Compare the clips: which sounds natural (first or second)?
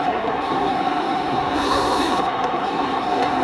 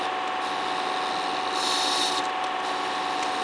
second